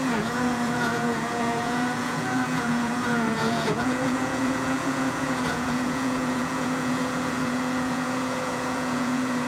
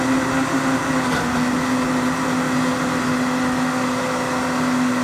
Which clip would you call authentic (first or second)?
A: second